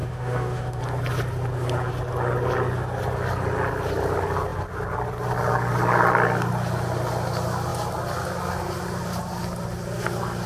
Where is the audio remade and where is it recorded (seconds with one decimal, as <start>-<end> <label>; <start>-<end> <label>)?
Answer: 0.0-0.8 remade; 0.8-10.5 recorded